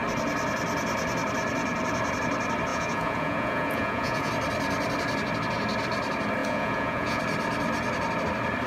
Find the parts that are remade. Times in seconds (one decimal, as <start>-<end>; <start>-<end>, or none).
2.7-4.3; 6.4-7.2

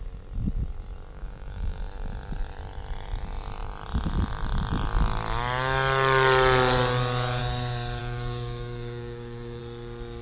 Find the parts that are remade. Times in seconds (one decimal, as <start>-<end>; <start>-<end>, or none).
1.1-1.8; 8.0-9.6

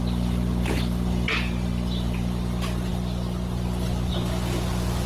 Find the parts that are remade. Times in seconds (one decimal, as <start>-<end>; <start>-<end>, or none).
none

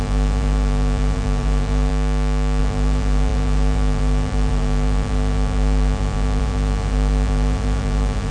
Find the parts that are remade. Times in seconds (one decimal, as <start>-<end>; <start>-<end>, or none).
0.0-1.9; 2.6-8.3